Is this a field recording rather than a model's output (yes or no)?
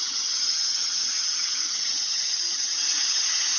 no